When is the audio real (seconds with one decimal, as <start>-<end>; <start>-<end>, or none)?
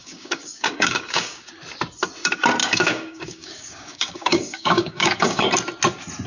1.5-2.6; 5.5-6.3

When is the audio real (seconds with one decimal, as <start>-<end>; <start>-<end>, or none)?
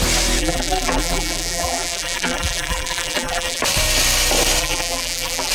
0.0-0.4; 3.6-4.6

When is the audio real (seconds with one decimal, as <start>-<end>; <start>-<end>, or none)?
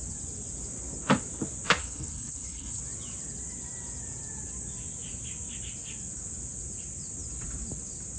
0.0-1.8; 2.8-8.2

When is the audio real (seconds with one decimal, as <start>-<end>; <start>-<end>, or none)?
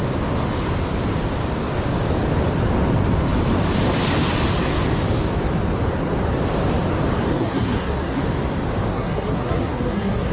0.0-7.3; 8.2-8.9